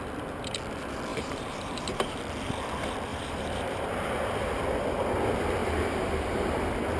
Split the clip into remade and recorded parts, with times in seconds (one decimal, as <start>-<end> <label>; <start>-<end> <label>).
0.0-1.1 recorded; 1.1-2.2 remade; 2.2-3.1 recorded; 3.1-3.9 remade; 3.9-5.6 recorded; 5.6-6.6 remade; 6.6-7.0 recorded